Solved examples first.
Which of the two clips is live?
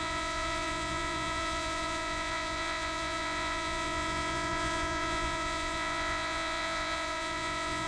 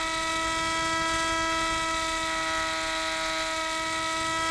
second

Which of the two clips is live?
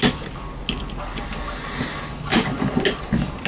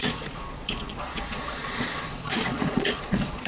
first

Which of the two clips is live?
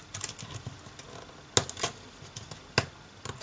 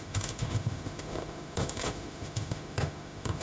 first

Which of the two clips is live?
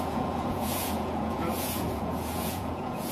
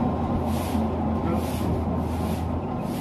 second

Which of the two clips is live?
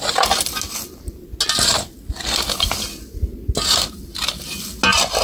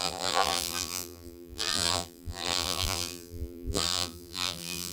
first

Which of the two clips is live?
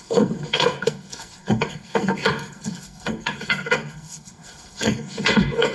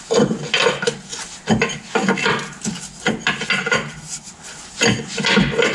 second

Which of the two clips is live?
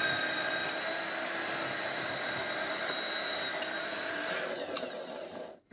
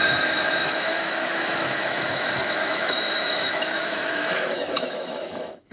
first